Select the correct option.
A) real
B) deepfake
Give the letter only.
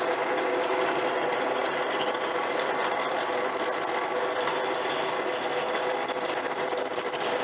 A